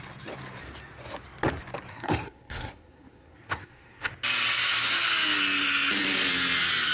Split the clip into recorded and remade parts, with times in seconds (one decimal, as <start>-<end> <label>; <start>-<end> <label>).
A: 0.0-1.9 recorded; 1.9-4.1 remade; 4.1-6.9 recorded